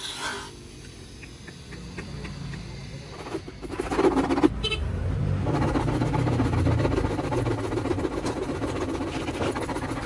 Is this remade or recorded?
recorded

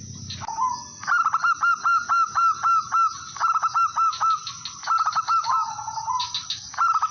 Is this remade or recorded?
recorded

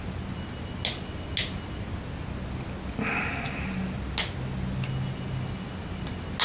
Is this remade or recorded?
recorded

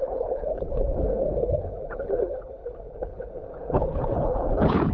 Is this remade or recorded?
remade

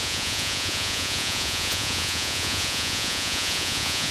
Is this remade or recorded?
remade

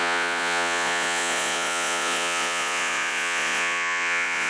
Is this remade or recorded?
remade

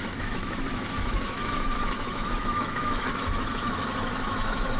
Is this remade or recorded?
remade